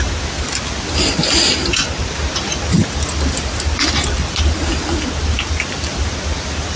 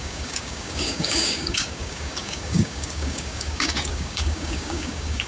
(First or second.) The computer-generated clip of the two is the second